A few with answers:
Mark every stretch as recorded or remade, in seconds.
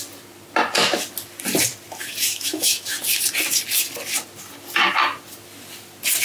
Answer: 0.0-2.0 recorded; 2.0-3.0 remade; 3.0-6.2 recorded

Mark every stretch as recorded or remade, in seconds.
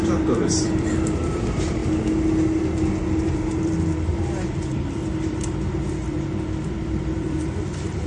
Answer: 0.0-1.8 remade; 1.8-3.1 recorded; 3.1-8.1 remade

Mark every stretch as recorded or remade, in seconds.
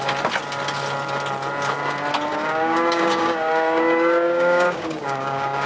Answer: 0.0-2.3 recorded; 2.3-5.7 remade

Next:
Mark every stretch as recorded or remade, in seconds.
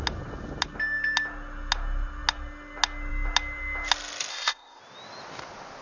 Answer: 0.0-4.3 recorded; 4.3-4.8 remade; 4.8-5.8 recorded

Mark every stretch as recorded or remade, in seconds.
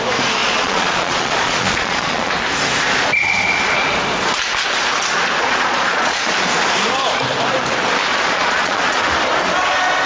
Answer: 0.0-0.4 recorded; 0.4-2.3 remade; 2.3-5.4 recorded; 5.4-6.3 remade; 6.3-8.1 recorded; 8.1-9.0 remade; 9.0-10.1 recorded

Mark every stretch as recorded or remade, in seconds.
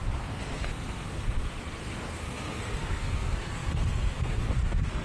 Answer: 0.0-5.0 remade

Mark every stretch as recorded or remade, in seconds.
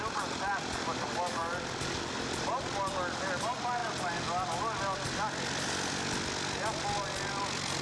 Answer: 0.0-7.8 recorded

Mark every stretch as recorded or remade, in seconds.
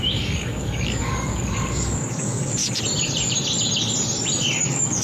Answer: 0.0-2.6 remade; 2.6-4.6 recorded; 4.6-5.0 remade